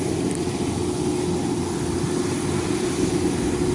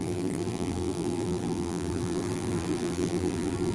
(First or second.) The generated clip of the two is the second